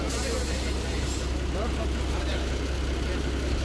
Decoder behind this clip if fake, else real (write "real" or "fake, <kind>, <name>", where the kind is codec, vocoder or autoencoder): real